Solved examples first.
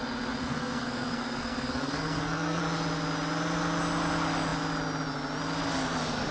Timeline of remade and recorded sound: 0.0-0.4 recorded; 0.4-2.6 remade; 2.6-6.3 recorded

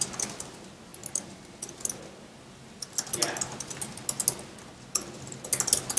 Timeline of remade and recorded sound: 0.0-6.0 recorded